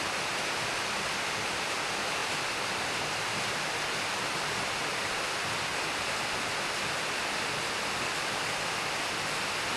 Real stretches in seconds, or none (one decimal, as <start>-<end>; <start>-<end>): 0.0-9.8